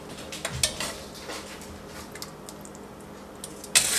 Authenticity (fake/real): real